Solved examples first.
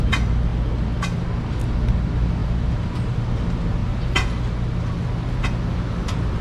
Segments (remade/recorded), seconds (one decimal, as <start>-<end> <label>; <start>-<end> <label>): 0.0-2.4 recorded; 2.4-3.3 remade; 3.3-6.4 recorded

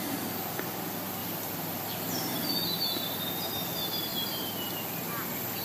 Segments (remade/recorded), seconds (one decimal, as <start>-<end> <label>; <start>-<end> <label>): 0.0-1.2 recorded; 1.2-2.1 remade; 2.1-5.6 recorded

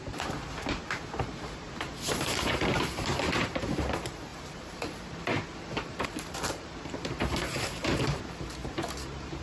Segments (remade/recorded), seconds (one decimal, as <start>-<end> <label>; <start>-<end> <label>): 0.0-9.4 remade